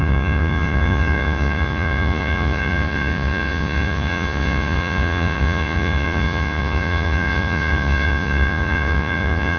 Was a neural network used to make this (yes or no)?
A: yes